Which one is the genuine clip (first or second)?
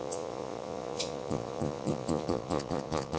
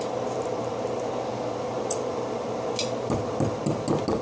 second